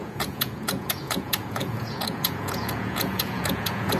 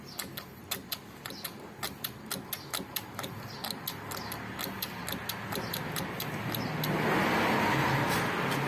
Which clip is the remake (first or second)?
first